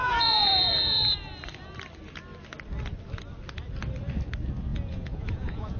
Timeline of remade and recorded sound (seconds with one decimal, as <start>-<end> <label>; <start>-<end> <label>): 0.0-1.1 remade; 1.1-4.7 recorded; 4.7-5.8 remade